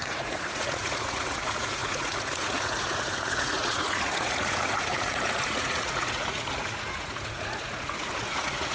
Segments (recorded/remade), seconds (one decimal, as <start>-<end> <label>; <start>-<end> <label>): 0.0-8.7 remade